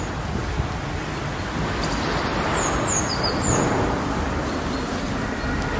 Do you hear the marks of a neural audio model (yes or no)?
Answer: yes